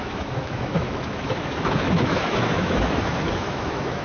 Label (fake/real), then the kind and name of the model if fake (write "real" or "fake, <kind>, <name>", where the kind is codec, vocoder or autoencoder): fake, autoencoder, DAC-VAE